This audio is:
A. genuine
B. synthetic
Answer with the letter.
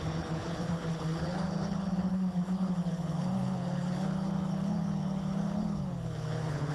B